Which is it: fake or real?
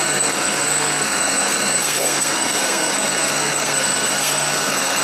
fake